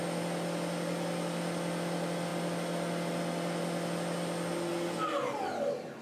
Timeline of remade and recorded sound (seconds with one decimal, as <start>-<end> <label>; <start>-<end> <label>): 0.0-6.0 recorded